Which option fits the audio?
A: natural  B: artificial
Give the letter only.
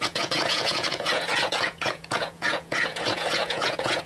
B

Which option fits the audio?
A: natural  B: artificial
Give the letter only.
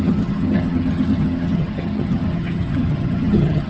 B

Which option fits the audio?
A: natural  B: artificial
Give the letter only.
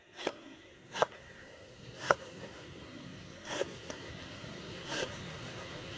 B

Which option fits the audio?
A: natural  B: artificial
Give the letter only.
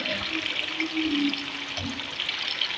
A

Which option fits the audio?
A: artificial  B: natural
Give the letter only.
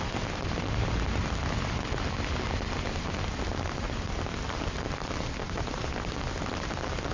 B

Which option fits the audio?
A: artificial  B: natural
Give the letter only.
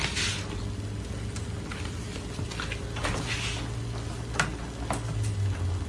B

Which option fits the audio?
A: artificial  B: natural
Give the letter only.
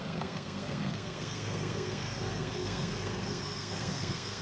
A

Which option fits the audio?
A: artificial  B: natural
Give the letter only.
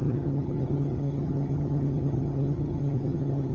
A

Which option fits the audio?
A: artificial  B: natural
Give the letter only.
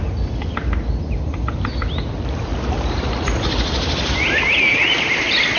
B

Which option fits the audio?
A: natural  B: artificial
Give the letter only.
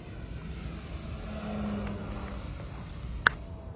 A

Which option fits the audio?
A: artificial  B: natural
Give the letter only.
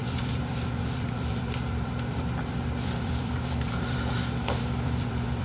A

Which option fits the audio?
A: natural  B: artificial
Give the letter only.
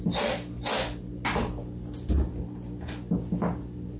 A